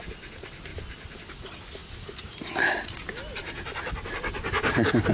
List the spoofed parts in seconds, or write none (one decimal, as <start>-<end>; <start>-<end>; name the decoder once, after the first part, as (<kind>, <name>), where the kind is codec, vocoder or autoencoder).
none